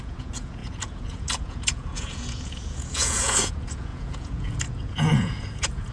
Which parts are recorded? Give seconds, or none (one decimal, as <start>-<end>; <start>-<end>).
none

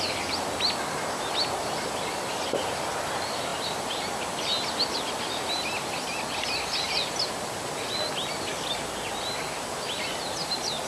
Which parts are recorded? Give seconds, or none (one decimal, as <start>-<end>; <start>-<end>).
0.0-10.9

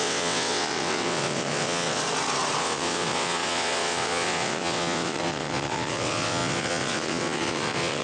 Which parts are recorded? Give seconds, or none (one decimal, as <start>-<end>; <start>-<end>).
2.0-2.6

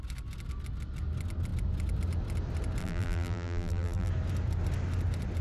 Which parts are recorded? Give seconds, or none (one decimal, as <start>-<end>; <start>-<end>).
0.0-2.8; 4.1-5.4

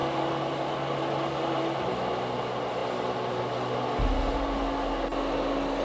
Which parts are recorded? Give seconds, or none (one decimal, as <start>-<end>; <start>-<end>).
0.0-5.8

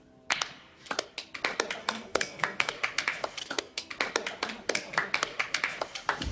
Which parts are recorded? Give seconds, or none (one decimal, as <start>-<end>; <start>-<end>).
0.0-1.8; 2.7-3.4; 3.9-6.3

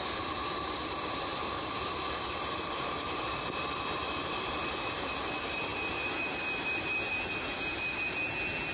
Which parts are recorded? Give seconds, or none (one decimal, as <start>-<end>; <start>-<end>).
none